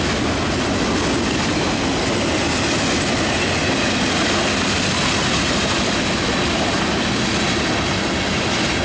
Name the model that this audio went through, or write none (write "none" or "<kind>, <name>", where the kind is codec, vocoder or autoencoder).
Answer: none